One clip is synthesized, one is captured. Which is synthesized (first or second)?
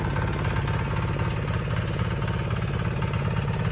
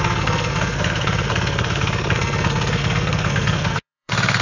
second